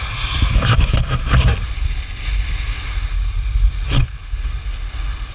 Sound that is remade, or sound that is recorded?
recorded